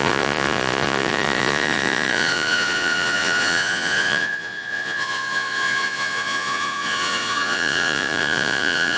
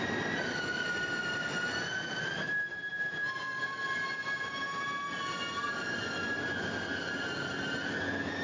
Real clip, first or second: second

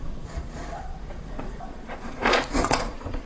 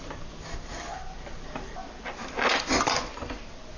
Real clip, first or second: second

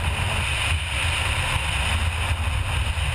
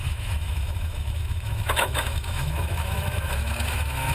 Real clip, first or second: first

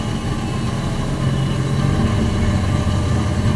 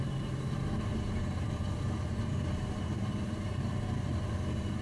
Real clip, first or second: first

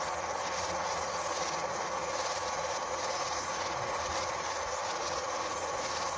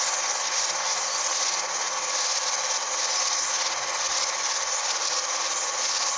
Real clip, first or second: second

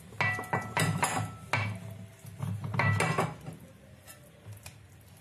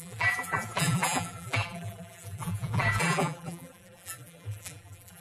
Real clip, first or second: first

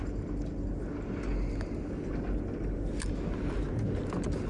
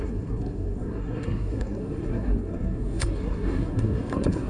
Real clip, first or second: first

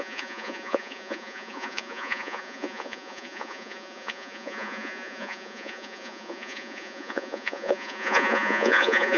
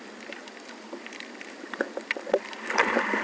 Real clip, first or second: second